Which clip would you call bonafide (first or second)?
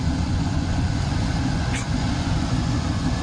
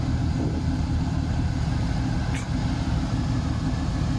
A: second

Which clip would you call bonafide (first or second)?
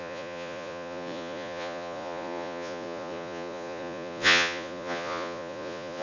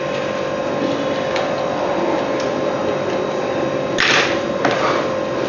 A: second